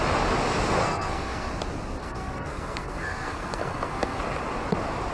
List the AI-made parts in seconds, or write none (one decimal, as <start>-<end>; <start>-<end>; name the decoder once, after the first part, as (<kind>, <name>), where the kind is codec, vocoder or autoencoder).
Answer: 0.8-1.5 (codec, SNAC); 2.0-4.2